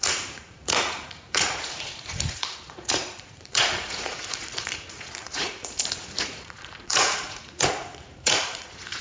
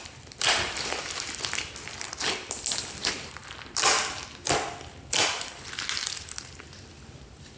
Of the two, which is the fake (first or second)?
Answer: first